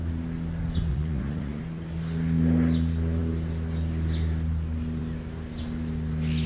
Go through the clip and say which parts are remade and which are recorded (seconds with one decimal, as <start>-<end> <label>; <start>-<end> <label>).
0.0-0.9 recorded; 0.9-1.6 remade; 1.6-6.5 recorded